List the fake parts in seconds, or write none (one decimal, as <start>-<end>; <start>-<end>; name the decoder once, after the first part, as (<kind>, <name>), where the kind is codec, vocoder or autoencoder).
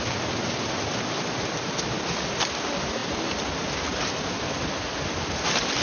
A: none